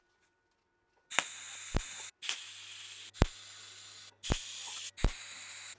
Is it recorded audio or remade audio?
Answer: recorded